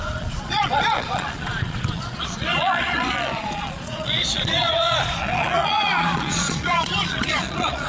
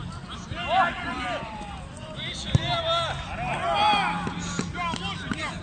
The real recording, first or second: second